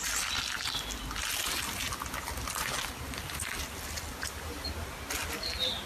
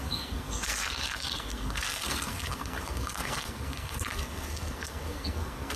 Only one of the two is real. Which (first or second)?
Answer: first